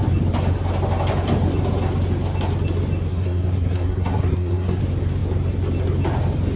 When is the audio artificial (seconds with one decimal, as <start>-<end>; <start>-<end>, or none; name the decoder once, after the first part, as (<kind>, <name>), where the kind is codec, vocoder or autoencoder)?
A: 3.1-4.8 (codec, SNAC)